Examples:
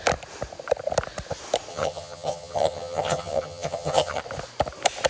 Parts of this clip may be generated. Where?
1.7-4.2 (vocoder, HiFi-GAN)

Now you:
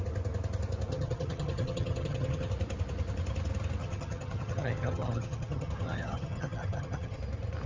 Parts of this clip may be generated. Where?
0.9-2.5 (vocoder, HiFi-GAN); 3.8-7.2

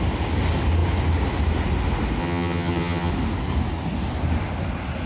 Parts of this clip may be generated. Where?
2.2-3.1 (vocoder, HiFi-GAN)

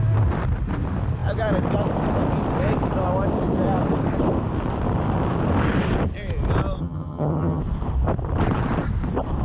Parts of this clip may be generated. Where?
6.8-7.6 (vocoder, HiFi-GAN)

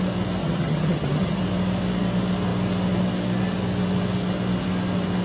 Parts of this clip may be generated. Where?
0.4-1.4 (vocoder, HiFi-GAN)

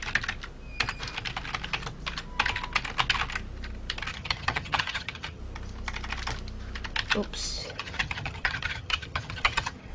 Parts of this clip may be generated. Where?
4.1-5.4 (vocoder, HiFi-GAN); 7.6-9.9

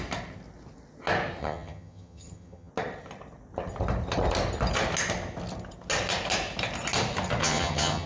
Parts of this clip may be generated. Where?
1.4-2.7 (vocoder, HiFi-GAN); 7.4-8.1

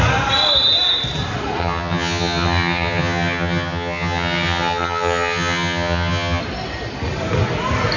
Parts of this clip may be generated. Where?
1.6-6.4 (vocoder, HiFi-GAN)